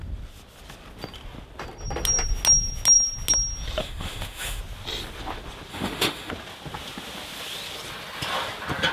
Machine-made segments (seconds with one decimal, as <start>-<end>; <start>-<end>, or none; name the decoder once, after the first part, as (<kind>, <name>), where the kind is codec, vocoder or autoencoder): 3.8-4.6 (autoencoder, DAC-VAE); 5.7-6.3